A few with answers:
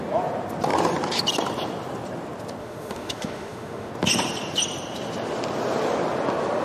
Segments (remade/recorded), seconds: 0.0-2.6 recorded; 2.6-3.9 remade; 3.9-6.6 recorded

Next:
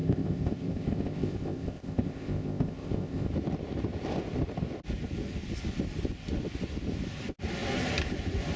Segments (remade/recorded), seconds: 0.0-3.3 remade; 3.3-8.6 recorded

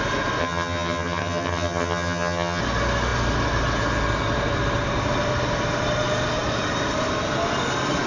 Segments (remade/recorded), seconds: 0.0-0.4 recorded; 0.4-2.6 remade; 2.6-8.1 recorded

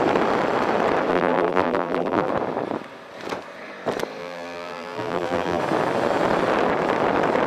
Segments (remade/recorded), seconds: 0.0-1.1 recorded; 1.1-2.3 remade; 2.3-4.2 recorded; 4.2-5.6 remade; 5.6-7.5 recorded